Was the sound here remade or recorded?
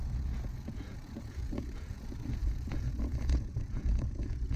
remade